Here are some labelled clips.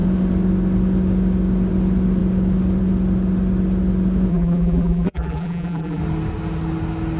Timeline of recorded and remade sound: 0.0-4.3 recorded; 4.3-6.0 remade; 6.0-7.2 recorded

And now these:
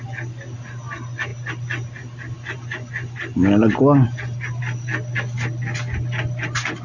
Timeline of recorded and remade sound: 0.0-6.8 recorded